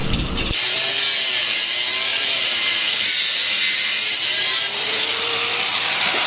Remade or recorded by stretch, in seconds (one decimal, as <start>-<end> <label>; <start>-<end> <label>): 0.0-0.9 remade; 0.9-2.1 recorded; 2.1-6.3 remade